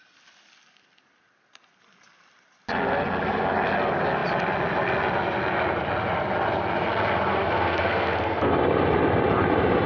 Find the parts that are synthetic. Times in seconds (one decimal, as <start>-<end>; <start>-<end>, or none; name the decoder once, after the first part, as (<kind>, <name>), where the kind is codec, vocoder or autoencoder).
7.3-8.5 (codec, SNAC)